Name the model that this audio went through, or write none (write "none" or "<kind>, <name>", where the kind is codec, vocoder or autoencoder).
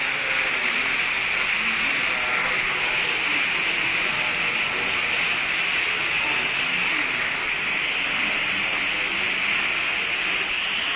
none